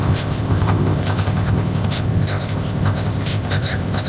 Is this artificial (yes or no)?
yes